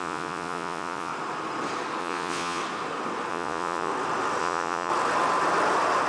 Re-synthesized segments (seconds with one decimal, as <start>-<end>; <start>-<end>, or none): 0.0-1.1; 2.0-2.6; 3.3-3.9; 4.4-4.9

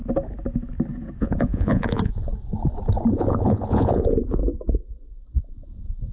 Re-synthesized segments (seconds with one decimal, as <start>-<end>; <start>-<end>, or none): 1.2-2.3; 3.1-4.4; 5.3-6.1